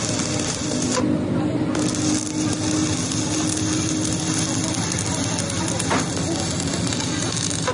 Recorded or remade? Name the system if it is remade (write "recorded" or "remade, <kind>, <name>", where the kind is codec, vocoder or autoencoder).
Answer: recorded